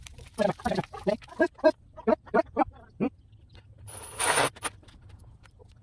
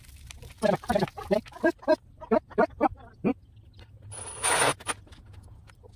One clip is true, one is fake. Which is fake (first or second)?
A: first